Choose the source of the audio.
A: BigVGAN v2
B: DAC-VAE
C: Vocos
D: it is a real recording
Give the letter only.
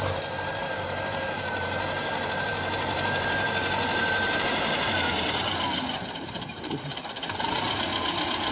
A